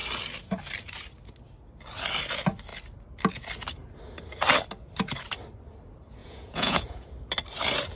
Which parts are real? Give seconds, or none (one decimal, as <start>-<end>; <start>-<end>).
0.0-6.2; 7.1-8.0